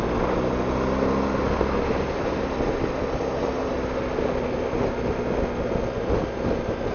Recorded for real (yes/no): yes